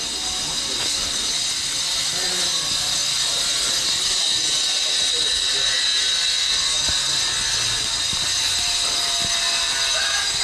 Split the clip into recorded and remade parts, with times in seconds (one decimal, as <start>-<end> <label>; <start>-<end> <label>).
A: 0.0-10.4 recorded